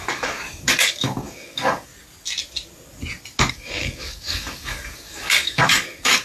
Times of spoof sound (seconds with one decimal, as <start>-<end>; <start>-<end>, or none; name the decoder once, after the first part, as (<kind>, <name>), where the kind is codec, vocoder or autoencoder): 0.0-1.9 (codec, DAC); 3.5-6.2